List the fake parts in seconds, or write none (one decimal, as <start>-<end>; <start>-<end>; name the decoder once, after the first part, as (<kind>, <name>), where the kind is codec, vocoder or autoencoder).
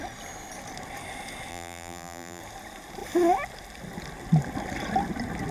1.5-2.4 (vocoder, BigVGAN v2)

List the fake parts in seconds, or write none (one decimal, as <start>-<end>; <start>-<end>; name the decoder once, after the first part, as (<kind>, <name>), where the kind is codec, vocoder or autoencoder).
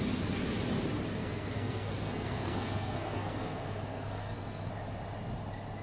1.2-4.7 (codec, SNAC)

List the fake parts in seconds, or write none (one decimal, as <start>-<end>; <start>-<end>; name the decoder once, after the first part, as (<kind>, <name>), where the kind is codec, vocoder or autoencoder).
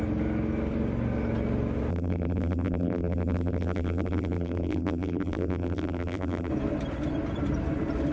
1.9-6.5 (vocoder, BigVGAN v2)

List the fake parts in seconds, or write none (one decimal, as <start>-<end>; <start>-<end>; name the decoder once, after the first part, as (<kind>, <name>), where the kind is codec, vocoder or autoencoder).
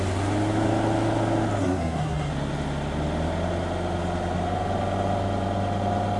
1.6-2.3 (codec, SNAC)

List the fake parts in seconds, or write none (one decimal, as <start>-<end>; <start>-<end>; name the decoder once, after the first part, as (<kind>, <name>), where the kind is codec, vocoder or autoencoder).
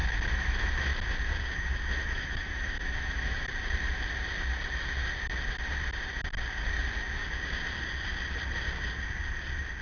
0.0-0.7 (autoencoder, DAC-VAE); 2.0-3.4